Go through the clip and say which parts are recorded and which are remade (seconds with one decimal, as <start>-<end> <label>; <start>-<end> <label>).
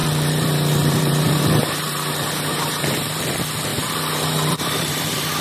0.0-3.2 remade; 3.2-3.7 recorded; 3.7-5.4 remade